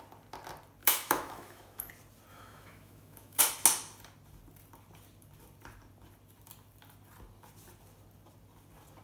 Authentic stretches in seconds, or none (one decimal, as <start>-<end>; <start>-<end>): 0.0-0.8; 1.9-2.3; 3.4-9.0